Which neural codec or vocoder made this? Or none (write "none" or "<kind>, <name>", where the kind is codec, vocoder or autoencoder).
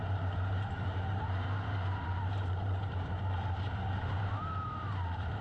vocoder, BigVGAN v2